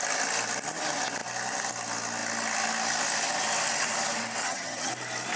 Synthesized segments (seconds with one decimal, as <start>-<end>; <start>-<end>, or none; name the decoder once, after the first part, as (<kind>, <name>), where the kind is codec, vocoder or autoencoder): 4.4-4.9 (vocoder, HiFi-GAN)